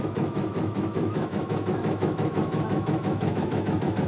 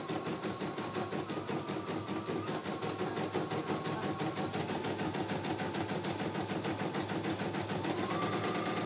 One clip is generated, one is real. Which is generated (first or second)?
first